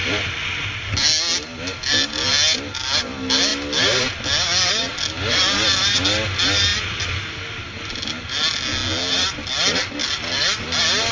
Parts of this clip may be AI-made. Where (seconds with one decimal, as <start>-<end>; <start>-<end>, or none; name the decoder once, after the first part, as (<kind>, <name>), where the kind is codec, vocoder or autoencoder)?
none